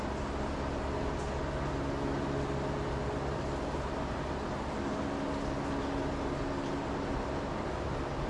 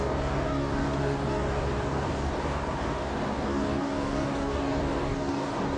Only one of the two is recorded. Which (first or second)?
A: first